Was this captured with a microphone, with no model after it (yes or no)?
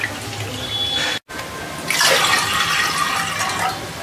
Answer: yes